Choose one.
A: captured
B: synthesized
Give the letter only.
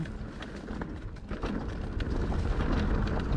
A